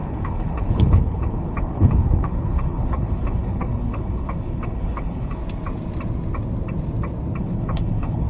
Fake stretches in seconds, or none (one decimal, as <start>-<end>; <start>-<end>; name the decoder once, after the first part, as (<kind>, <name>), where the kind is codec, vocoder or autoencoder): 0.0-5.4 (codec, HILCodec); 7.4-8.3